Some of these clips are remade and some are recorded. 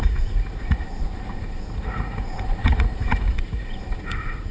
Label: remade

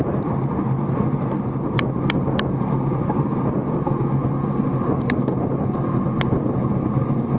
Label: recorded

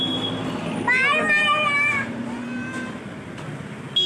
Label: recorded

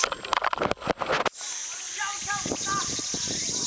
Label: recorded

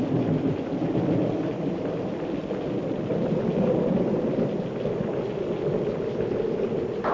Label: recorded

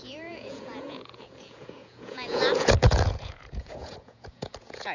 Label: remade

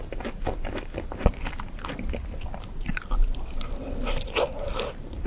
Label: recorded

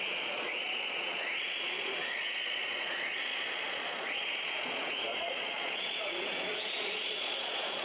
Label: remade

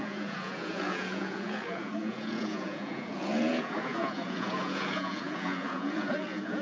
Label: remade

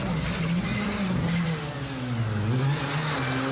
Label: recorded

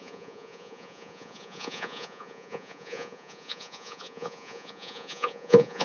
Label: remade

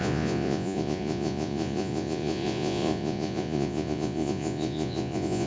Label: remade